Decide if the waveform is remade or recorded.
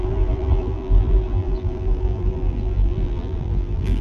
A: remade